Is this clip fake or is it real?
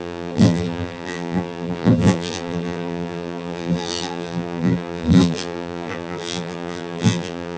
fake